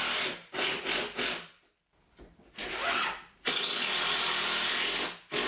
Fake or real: real